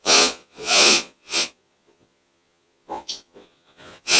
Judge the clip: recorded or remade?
remade